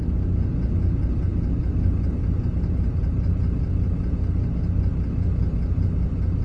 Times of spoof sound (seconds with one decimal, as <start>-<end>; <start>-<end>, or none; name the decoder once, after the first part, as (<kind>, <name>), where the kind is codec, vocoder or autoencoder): none